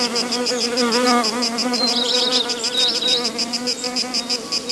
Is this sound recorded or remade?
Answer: recorded